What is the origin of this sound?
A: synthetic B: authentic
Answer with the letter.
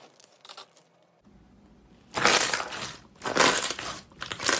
B